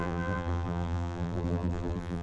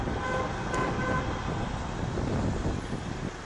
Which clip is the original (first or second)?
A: second